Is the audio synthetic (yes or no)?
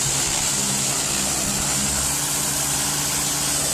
no